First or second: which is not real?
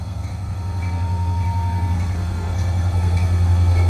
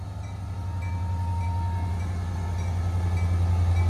first